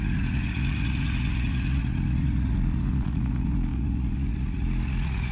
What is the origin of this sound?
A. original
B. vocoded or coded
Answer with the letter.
B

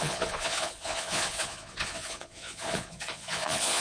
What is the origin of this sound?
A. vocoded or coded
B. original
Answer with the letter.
A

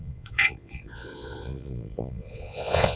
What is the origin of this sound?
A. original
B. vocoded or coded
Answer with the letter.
B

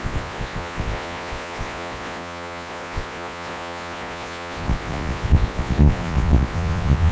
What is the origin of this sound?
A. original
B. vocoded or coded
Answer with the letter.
B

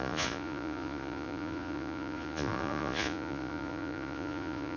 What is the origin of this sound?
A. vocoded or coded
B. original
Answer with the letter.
A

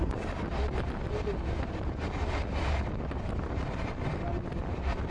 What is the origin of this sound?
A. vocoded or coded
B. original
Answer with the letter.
B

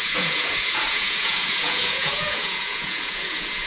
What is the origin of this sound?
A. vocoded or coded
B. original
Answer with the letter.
A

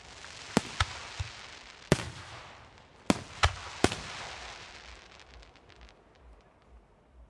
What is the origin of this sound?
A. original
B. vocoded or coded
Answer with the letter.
A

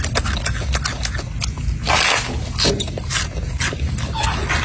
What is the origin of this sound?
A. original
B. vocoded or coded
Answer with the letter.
A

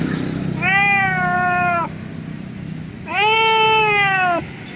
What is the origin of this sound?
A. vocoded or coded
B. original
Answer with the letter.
B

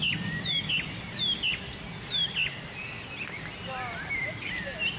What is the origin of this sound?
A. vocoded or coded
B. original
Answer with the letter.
B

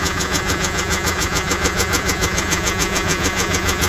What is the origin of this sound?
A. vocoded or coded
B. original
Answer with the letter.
A